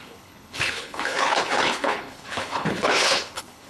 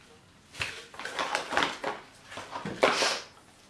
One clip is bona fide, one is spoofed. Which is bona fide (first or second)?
second